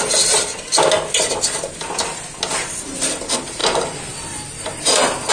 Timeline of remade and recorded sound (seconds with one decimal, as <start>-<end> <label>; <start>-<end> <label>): 0.0-3.6 recorded; 3.6-5.3 remade

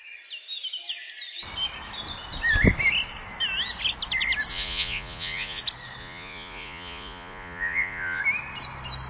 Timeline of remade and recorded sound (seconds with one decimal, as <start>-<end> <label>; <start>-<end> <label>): 0.0-4.5 recorded; 4.5-5.6 remade; 5.6-6.0 recorded; 6.0-8.2 remade; 8.2-9.1 recorded

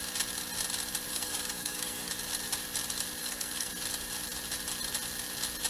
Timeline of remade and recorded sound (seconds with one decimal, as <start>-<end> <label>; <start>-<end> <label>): 0.0-1.1 recorded; 1.1-2.1 remade; 2.1-3.2 recorded; 3.2-3.7 remade; 3.7-5.7 recorded

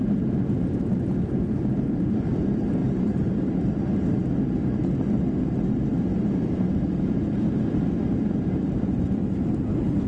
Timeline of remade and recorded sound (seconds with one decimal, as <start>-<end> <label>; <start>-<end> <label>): 0.0-2.8 recorded; 2.8-3.3 remade; 3.3-6.1 recorded; 6.1-10.1 remade

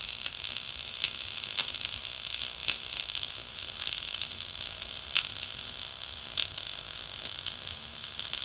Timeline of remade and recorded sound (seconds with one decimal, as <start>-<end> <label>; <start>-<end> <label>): 0.0-8.4 remade

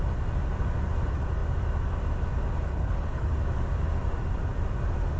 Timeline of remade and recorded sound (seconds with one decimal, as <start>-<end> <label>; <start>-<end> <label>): 0.0-2.7 recorded; 2.7-3.4 remade; 3.4-5.2 recorded